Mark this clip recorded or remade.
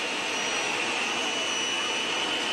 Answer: recorded